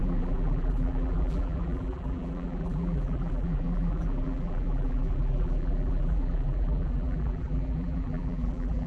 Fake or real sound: fake